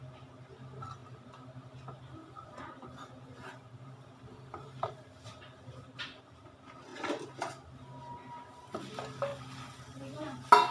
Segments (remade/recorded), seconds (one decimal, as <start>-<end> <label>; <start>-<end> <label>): 0.0-1.0 recorded; 1.0-4.9 remade; 4.9-9.3 recorded; 9.3-10.2 remade; 10.2-10.7 recorded